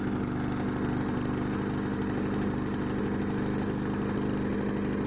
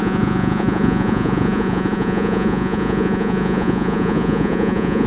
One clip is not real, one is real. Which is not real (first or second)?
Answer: second